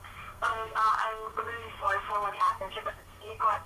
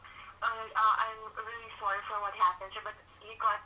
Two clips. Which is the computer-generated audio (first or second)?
first